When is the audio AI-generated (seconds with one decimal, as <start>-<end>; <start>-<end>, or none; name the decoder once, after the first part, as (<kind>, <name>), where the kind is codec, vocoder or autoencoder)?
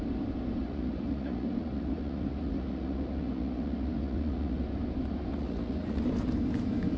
0.6-4.6 (vocoder, Vocos); 5.3-6.0